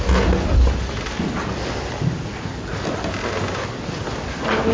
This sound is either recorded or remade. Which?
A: recorded